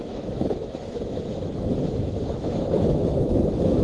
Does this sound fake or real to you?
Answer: fake